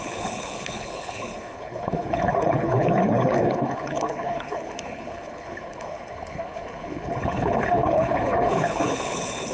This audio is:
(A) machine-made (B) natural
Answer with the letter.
A